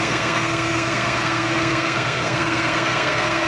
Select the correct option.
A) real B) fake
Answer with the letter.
B